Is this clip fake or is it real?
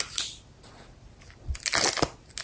real